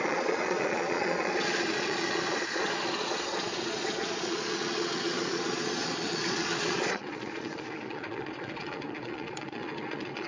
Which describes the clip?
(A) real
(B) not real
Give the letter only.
B